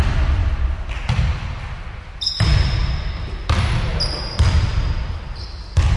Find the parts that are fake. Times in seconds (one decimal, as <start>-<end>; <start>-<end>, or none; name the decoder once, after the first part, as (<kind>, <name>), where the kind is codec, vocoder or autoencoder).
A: none